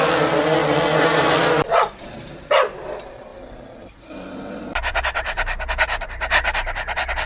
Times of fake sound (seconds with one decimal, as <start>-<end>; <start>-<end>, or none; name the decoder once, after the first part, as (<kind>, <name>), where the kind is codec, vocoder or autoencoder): none